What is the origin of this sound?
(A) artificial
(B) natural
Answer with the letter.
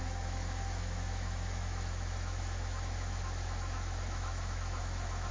A